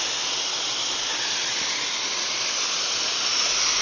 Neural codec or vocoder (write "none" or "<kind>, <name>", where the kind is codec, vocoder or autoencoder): none